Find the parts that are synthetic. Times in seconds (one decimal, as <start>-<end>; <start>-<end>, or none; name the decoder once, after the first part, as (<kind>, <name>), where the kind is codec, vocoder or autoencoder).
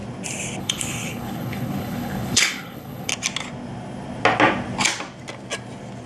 0.6-3.1 (codec, HILCodec)